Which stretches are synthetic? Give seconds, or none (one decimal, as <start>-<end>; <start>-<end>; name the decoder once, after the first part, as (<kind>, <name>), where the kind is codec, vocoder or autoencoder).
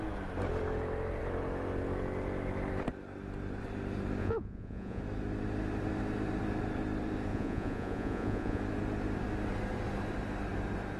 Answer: 4.2-5.0 (vocoder, Vocos); 7.3-8.6